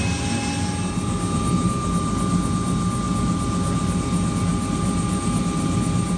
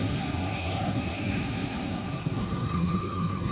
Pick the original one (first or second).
first